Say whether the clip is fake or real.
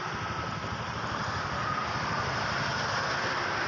real